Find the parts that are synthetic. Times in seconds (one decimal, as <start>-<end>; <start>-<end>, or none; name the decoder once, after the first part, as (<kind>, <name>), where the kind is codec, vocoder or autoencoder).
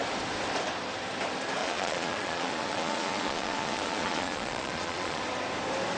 1.6-5.2 (vocoder, Vocos)